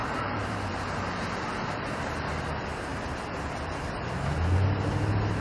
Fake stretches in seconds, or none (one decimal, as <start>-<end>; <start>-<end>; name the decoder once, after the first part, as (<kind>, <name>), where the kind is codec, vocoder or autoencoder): 0.0-2.5 (vocoder, BigVGAN v2); 2.9-3.8